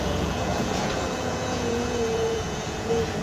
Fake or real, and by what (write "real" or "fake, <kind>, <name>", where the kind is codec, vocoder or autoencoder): fake, vocoder, Vocos